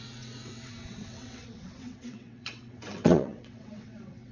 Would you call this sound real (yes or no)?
no